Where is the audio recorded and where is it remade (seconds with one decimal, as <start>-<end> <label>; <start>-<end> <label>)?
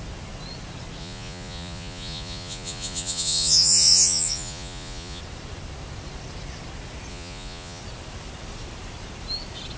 0.0-1.0 recorded; 1.0-5.2 remade; 5.2-7.1 recorded; 7.1-7.8 remade; 7.8-9.8 recorded